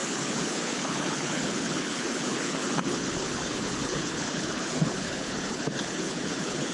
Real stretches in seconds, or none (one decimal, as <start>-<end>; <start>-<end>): none